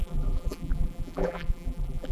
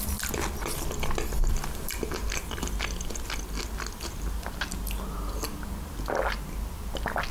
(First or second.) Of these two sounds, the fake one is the first